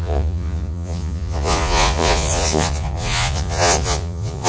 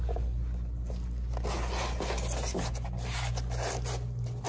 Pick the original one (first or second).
second